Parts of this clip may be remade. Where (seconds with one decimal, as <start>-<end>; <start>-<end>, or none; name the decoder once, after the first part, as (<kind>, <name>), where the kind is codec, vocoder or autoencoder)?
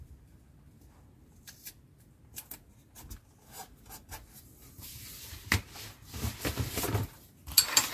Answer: none